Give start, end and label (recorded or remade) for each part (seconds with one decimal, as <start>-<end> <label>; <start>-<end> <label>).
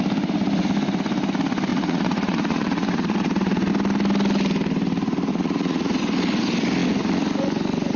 0.0-1.7 recorded; 1.7-3.7 remade; 3.7-5.3 recorded; 5.3-6.0 remade; 6.0-8.0 recorded